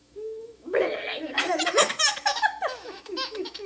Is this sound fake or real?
fake